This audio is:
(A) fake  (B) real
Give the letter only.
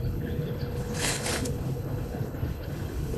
A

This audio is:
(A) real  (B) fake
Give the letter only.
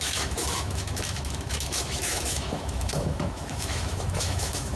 B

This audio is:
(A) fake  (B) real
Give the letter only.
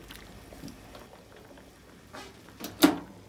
B